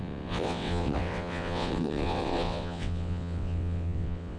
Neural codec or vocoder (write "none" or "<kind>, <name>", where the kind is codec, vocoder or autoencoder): vocoder, WaveNeXt